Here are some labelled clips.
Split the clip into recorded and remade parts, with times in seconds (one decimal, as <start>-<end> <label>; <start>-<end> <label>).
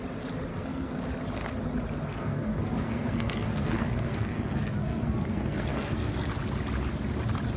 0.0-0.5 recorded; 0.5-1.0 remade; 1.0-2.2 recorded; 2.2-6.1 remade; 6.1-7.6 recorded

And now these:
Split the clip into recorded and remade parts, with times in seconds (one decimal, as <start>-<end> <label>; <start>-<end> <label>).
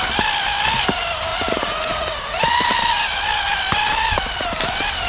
0.0-1.3 recorded; 1.3-2.4 remade; 2.4-5.1 recorded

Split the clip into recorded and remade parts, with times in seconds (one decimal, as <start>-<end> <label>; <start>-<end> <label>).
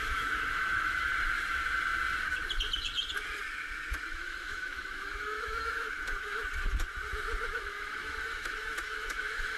0.0-1.1 remade; 1.1-4.1 recorded; 4.1-6.4 remade; 6.4-7.5 recorded; 7.5-9.6 remade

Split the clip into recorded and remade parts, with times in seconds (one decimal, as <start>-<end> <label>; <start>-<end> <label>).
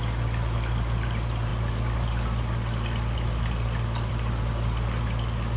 0.0-5.6 recorded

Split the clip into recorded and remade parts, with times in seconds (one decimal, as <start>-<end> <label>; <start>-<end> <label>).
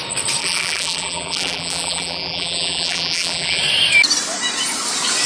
0.0-0.4 recorded; 0.4-3.6 remade; 3.6-5.3 recorded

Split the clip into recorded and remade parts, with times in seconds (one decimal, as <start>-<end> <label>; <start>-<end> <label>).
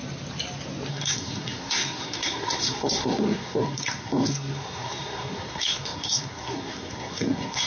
0.0-0.9 recorded; 0.9-7.7 remade